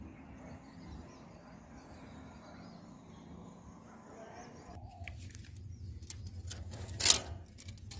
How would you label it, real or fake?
real